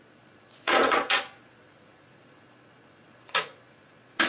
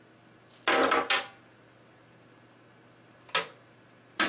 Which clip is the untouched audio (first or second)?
second